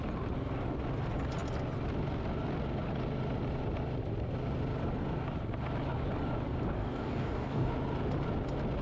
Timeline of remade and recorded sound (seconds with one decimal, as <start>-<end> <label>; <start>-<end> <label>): 0.0-6.8 recorded; 6.8-7.7 remade; 7.7-8.8 recorded